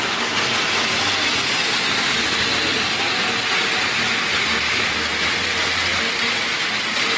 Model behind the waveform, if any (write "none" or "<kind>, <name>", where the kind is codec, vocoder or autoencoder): none